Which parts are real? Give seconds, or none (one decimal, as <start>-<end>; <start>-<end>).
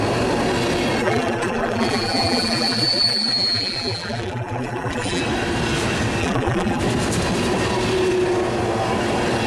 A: 0.0-1.0; 5.2-6.2; 6.8-9.5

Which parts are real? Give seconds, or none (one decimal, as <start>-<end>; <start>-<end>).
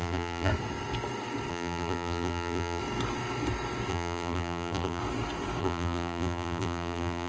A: 0.5-1.5; 2.8-3.9; 5.0-5.6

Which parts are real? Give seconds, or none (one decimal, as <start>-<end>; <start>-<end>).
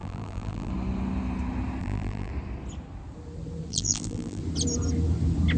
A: 0.7-1.8; 2.3-3.7; 4.4-5.6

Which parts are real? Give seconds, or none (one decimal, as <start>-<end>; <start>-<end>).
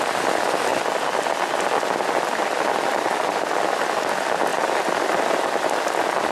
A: 0.7-2.7; 4.5-5.1